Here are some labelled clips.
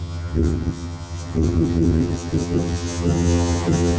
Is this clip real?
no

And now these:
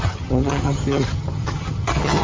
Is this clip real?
no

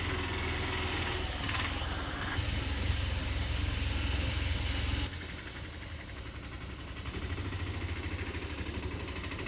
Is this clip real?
yes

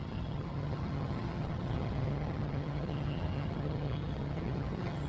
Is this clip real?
no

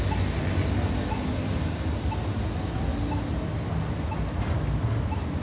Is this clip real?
yes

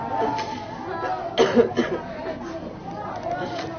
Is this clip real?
yes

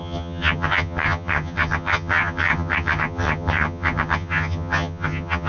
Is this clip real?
no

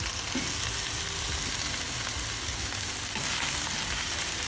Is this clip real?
yes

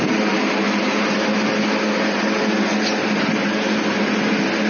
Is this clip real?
yes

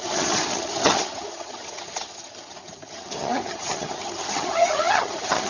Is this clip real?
no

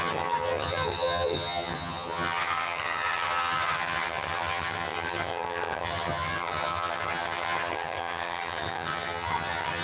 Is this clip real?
no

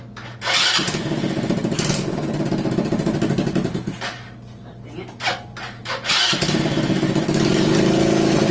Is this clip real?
yes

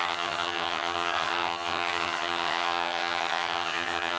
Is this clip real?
no